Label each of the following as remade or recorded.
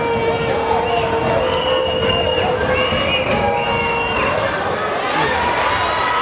recorded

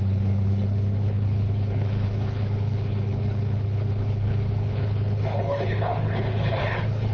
remade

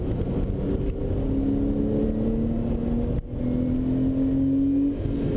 recorded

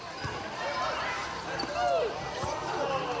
recorded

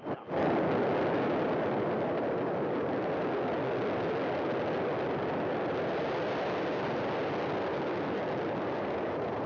recorded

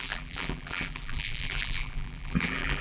remade